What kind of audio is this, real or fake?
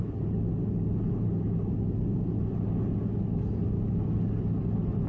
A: real